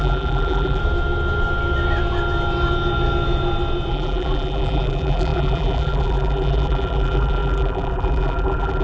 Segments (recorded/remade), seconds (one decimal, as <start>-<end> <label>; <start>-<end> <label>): 0.0-0.8 remade; 0.8-3.9 recorded; 3.9-8.8 remade